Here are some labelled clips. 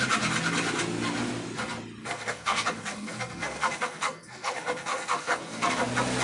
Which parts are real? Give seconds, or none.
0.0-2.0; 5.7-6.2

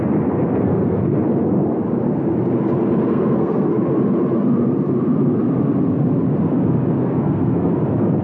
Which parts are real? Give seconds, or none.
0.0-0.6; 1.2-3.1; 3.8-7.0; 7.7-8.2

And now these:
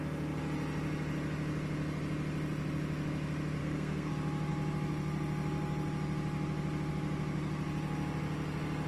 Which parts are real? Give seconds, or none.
0.0-3.6; 4.1-8.9